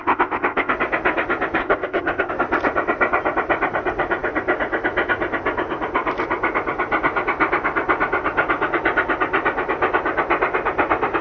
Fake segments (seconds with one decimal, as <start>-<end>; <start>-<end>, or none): 0.0-0.7; 1.6-2.3

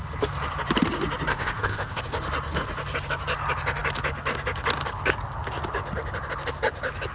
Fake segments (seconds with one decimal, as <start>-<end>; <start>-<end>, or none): 1.3-2.0

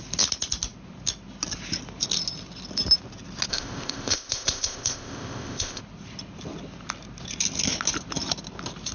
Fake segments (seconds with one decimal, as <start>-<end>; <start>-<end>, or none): 3.5-5.8